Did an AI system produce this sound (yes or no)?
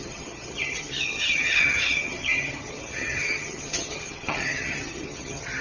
yes